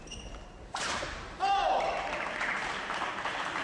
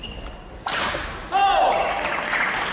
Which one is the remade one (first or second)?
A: first